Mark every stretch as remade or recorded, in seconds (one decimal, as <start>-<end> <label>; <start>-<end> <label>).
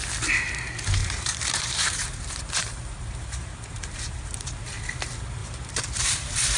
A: 0.0-1.0 recorded; 1.0-4.8 remade; 4.8-5.4 recorded; 5.4-6.6 remade